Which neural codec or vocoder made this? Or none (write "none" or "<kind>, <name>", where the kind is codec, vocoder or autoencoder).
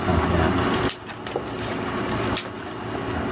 none